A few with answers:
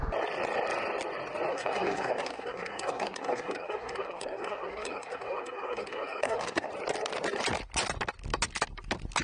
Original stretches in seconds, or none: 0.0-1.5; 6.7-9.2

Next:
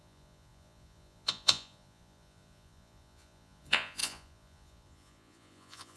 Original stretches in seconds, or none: none

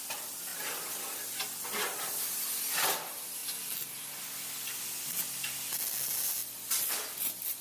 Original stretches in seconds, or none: 0.0-7.6